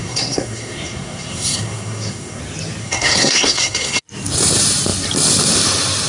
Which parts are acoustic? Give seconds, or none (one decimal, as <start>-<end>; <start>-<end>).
2.4-2.8; 4.0-6.1